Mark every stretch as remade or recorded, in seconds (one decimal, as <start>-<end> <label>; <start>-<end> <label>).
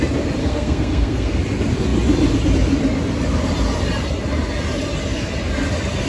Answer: 0.0-0.4 recorded; 0.4-1.4 remade; 1.4-6.1 recorded